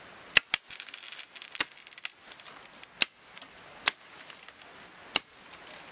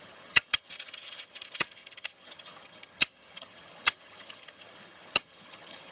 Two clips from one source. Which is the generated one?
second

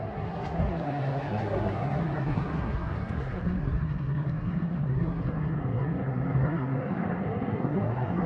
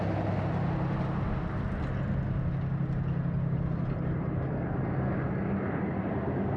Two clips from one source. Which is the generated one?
first